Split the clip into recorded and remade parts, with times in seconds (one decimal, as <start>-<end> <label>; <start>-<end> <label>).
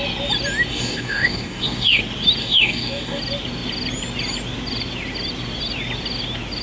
0.0-0.7 recorded; 0.7-2.0 remade; 2.0-2.4 recorded; 2.4-3.2 remade; 3.2-6.6 recorded